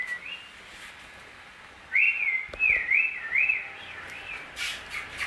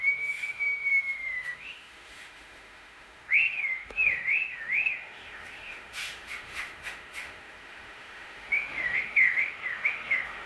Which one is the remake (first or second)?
second